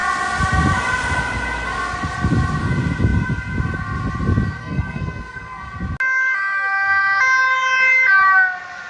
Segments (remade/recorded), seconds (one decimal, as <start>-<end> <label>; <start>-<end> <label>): 0.0-4.6 recorded; 4.6-5.7 remade; 5.7-8.9 recorded